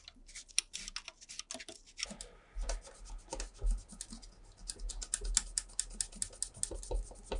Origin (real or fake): real